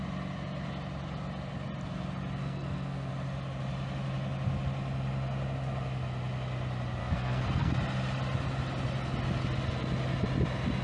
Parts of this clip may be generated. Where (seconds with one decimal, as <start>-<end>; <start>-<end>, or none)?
2.4-3.1; 7.0-7.7